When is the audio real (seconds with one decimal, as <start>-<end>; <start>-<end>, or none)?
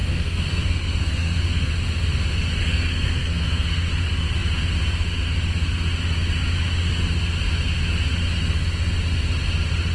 1.7-2.6; 3.9-9.9